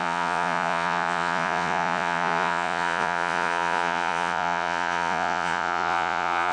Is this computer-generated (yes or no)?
yes